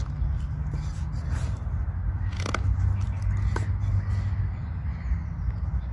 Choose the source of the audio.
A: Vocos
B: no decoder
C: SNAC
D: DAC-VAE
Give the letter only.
B